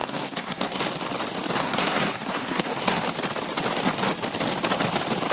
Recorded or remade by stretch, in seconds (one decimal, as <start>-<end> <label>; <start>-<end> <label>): 0.0-0.8 remade; 0.8-1.6 recorded; 1.6-3.0 remade; 3.0-5.3 recorded